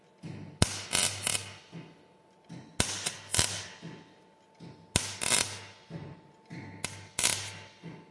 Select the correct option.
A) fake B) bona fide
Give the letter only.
B